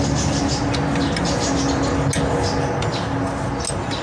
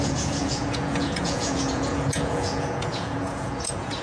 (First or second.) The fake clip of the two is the second